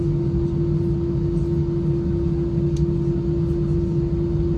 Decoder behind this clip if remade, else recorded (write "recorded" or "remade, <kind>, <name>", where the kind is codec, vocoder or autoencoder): recorded